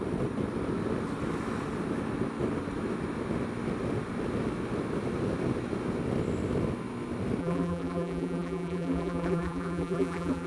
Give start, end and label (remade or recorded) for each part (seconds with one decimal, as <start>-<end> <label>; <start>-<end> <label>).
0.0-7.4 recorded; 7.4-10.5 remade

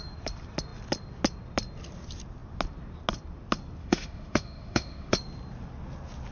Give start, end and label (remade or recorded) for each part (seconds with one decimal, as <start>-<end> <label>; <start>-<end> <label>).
0.0-3.8 recorded; 3.8-5.1 remade; 5.1-6.3 recorded

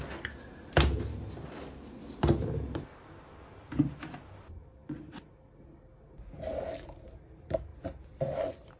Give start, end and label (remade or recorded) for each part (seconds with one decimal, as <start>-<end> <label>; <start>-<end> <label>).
0.0-8.8 recorded

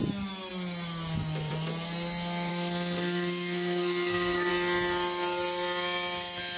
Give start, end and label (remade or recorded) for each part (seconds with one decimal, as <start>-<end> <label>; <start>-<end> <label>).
0.0-2.5 recorded; 2.5-4.5 remade; 4.5-6.6 recorded

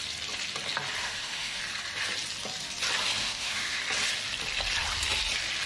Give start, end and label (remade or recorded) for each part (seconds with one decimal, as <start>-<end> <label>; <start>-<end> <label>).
0.0-1.0 recorded; 1.0-1.6 remade; 1.6-3.2 recorded; 3.2-3.8 remade; 3.8-5.7 recorded

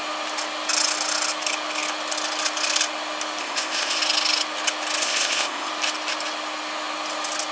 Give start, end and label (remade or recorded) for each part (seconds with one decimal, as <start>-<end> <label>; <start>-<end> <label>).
0.0-3.4 recorded; 3.4-4.0 remade; 4.0-5.0 recorded; 5.0-5.7 remade; 5.7-7.5 recorded